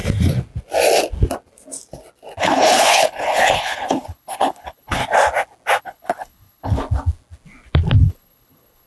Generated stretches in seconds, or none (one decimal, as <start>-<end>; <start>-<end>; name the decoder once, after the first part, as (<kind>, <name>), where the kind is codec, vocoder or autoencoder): 2.4-5.0 (codec, HILCodec); 5.8-6.8; 8.0-8.9